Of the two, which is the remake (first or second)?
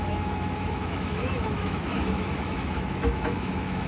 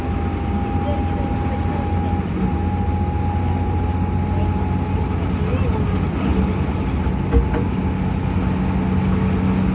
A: first